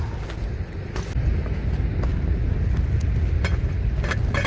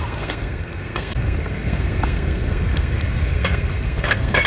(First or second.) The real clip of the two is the first